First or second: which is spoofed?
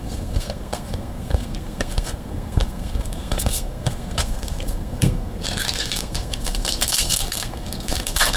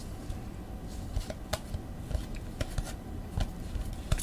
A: first